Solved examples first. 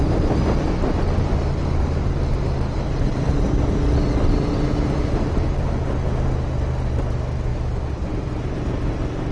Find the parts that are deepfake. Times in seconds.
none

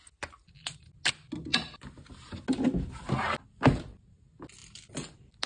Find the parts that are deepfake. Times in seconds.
none